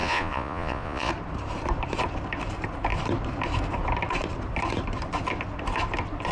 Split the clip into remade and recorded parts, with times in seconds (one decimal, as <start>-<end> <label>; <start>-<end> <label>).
0.0-1.1 remade; 1.1-6.3 recorded